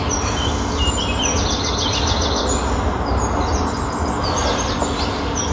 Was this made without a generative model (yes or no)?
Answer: yes